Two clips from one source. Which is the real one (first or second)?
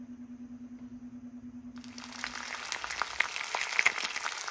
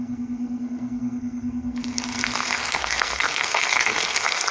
first